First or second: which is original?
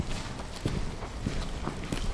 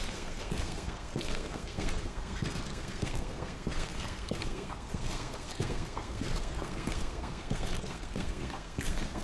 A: first